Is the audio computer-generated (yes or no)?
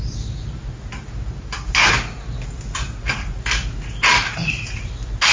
no